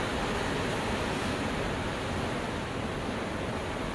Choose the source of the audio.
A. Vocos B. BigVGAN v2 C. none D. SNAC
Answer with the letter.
C